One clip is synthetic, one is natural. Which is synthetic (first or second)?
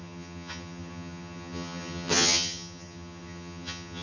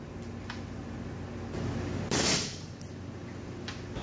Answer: first